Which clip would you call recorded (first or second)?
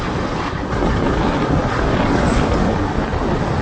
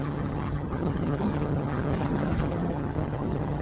first